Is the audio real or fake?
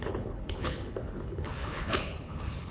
fake